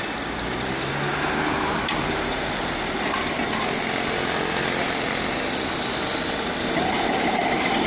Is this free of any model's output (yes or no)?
yes